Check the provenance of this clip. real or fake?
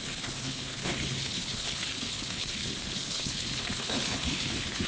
fake